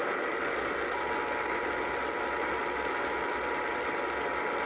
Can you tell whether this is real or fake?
real